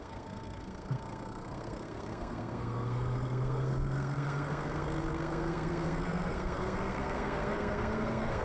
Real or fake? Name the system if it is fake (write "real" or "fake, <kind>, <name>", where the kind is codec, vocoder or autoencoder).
fake, codec, SNAC